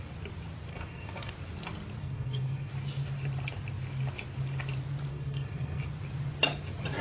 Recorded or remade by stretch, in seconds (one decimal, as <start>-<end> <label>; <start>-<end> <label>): 0.0-0.7 recorded; 0.7-1.3 remade; 1.3-2.0 recorded; 2.0-2.7 remade; 2.7-5.1 recorded; 5.1-5.9 remade; 5.9-7.0 recorded